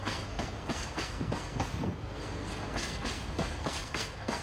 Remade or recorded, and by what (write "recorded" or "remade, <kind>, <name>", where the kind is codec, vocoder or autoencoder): remade, codec, SNAC